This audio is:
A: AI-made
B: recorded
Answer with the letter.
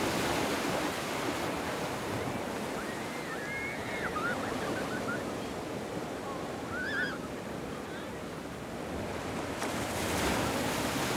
B